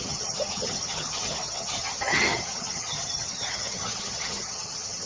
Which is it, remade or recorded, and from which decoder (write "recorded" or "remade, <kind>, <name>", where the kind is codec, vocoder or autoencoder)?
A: remade, vocoder, HiFi-GAN